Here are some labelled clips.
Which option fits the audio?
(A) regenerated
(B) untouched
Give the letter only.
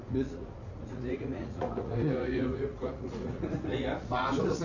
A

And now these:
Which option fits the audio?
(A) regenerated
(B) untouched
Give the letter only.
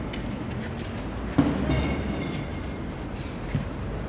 B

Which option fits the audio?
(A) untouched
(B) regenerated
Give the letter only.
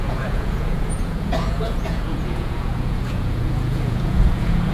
B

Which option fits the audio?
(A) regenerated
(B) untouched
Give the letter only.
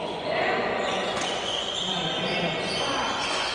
A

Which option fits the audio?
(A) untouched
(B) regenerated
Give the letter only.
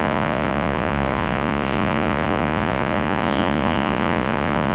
B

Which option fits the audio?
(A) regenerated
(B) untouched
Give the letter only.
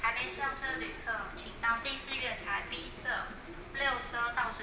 B